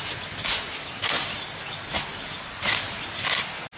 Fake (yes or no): no